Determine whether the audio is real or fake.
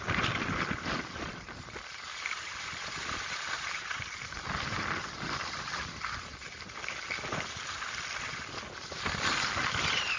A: real